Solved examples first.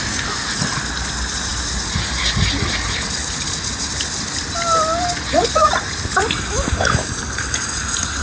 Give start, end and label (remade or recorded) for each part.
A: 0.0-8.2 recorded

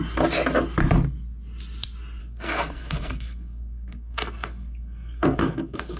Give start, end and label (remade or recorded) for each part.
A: 0.0-2.2 recorded; 2.2-6.0 remade

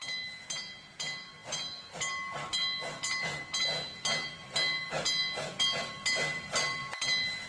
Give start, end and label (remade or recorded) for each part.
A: 0.0-7.5 recorded